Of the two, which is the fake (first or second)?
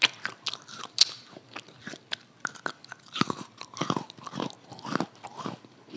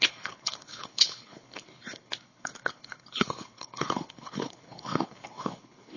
second